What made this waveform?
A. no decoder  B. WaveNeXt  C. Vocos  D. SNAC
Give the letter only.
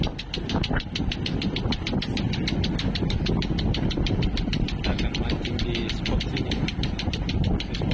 A